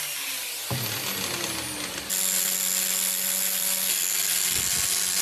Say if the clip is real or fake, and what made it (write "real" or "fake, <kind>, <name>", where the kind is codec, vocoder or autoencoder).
real